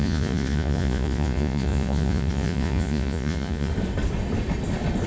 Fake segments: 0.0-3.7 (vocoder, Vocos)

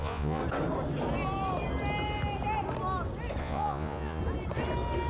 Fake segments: 0.0-0.4 (vocoder, Vocos); 3.4-4.2

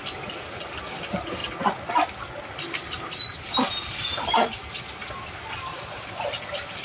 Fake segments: none

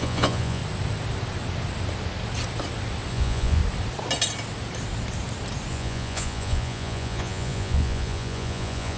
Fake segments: 0.0-0.6 (vocoder, Vocos); 3.1-3.6; 5.7-9.0

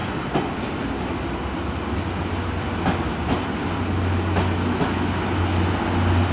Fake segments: none

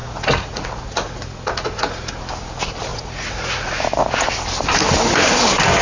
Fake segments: 0.0-2.1 (vocoder, Vocos); 2.9-4.1

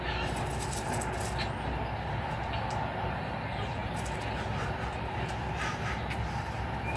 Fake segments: none

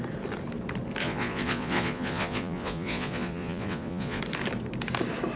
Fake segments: 1.0-4.2 (vocoder, Vocos)